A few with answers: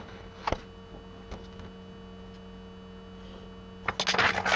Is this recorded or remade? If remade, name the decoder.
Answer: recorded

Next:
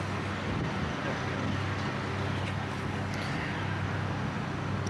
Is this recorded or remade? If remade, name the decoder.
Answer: recorded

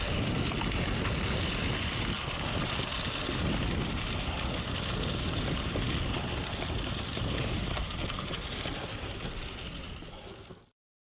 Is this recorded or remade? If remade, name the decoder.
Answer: recorded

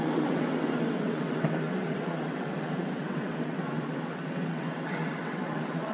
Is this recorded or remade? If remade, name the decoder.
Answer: remade, vocoder, WaveNeXt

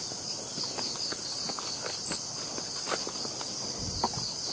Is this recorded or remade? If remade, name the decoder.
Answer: recorded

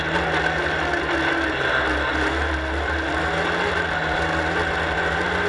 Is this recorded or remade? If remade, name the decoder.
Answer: recorded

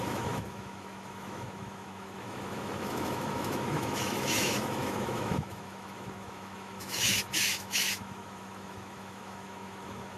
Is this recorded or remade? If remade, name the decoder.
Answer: remade, autoencoder, DAC-VAE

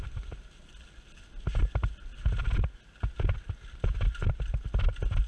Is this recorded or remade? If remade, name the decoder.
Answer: recorded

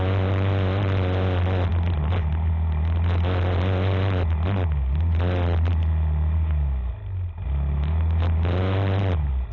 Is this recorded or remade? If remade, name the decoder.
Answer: recorded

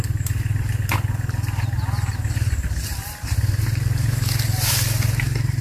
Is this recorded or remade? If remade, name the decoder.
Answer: recorded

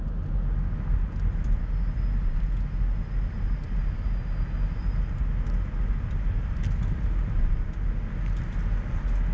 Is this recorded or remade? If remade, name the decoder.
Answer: recorded